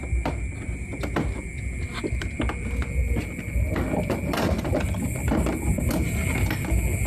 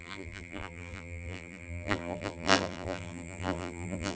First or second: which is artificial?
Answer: second